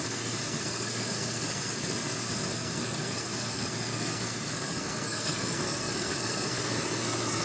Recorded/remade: remade